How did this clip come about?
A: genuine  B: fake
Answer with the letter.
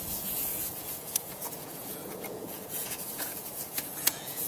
B